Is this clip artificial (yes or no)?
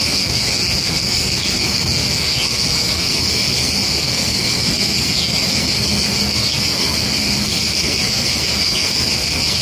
yes